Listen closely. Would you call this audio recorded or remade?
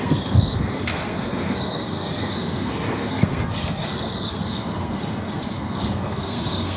remade